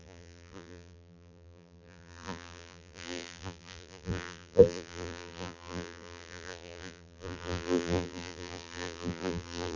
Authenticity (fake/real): fake